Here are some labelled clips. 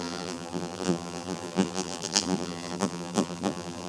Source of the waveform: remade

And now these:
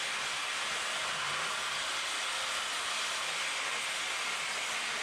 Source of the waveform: recorded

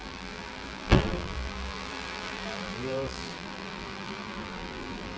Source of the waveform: remade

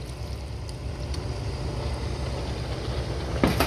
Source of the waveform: recorded